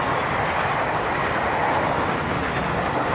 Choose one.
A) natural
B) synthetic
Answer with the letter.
A